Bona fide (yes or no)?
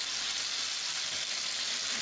yes